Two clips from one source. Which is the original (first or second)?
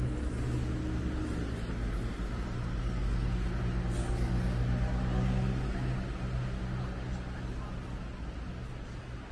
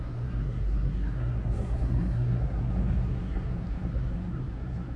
first